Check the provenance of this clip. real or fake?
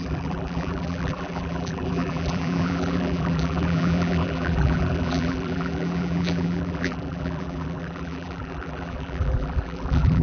fake